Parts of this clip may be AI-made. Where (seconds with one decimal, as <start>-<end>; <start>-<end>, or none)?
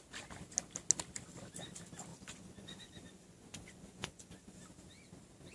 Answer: 2.1-4.6